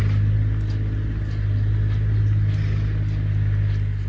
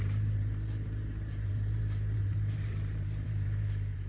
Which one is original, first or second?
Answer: first